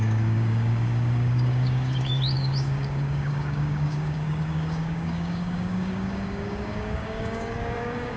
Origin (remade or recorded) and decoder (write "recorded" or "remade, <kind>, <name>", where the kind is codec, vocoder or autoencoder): remade, codec, DAC